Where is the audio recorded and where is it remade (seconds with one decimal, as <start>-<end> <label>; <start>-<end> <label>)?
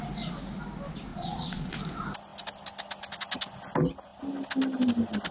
0.0-1.1 recorded; 1.1-1.7 remade; 1.7-5.3 recorded